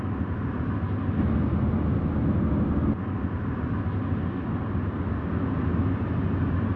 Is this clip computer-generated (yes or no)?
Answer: no